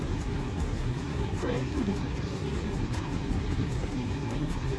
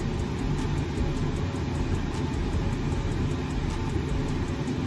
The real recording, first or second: second